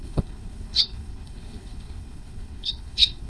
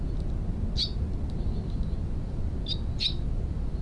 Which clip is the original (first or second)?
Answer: second